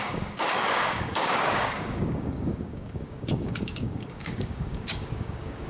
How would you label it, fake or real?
fake